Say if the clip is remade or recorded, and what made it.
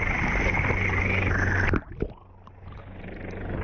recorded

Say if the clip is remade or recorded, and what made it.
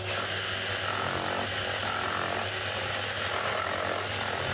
recorded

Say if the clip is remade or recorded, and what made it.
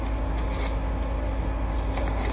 recorded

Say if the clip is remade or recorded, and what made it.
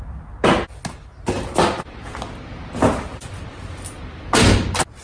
recorded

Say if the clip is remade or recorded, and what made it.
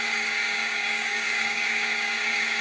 remade, codec, DAC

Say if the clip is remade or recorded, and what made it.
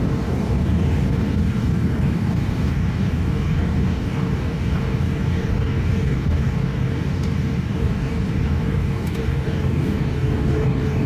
remade, codec, DAC